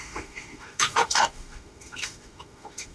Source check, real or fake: fake